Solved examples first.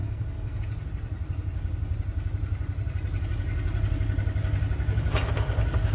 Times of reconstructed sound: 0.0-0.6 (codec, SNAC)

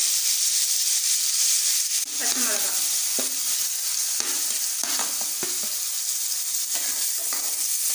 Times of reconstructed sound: 1.6-2.2 (vocoder, BigVGAN v2); 5.5-7.2

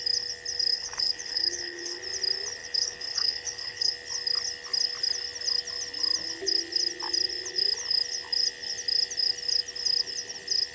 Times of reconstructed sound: 0.7-2.0 (codec, HILCodec); 2.6-3.9

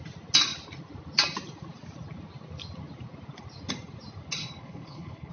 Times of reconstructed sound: 4.4-5.3 (codec, HILCodec)